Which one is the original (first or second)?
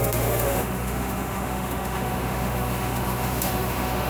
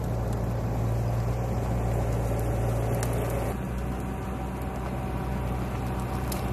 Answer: second